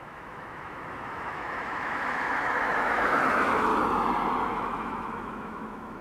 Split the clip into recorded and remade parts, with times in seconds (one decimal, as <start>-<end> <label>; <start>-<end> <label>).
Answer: 0.0-3.7 remade; 3.7-4.5 recorded; 4.5-6.0 remade